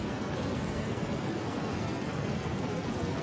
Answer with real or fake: fake